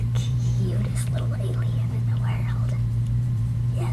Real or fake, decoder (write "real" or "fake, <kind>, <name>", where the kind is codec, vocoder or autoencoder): fake, vocoder, BigVGAN v2